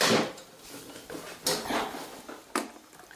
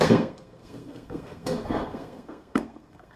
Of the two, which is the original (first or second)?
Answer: first